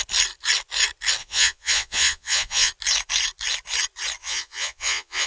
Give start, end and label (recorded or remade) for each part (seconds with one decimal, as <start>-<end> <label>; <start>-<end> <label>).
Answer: 0.0-1.2 recorded; 1.2-2.7 remade; 2.7-4.2 recorded; 4.2-5.3 remade